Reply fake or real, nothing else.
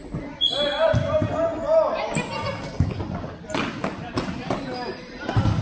real